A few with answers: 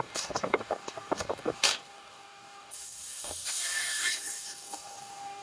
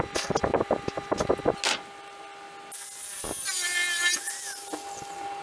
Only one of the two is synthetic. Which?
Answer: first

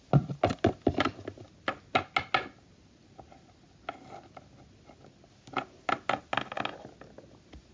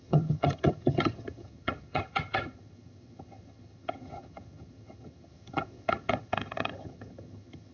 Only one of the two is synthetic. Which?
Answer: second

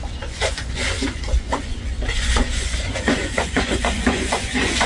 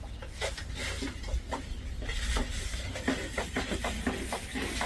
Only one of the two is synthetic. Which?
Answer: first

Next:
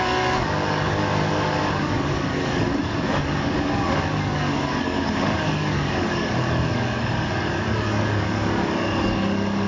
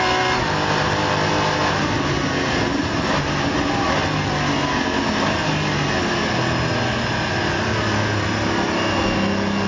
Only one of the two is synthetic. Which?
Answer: first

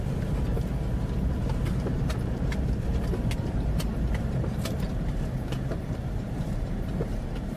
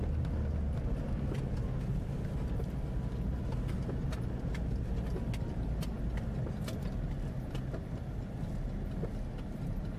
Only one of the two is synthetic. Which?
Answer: first